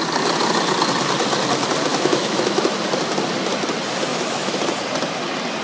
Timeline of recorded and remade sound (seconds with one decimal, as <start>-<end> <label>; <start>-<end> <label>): 0.0-1.9 recorded; 1.9-2.6 remade; 2.6-4.1 recorded; 4.1-4.6 remade; 4.6-5.6 recorded